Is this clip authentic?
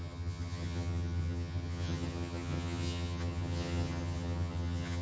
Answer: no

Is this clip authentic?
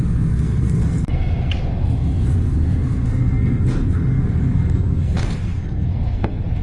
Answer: no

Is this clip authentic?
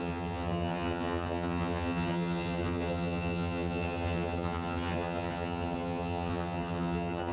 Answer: no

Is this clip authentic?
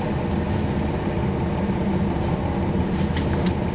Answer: yes